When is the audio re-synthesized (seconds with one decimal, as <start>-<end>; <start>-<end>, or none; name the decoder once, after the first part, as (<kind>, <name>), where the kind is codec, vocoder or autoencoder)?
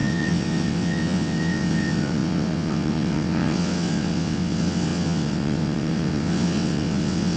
0.0-7.4 (vocoder, WaveNeXt)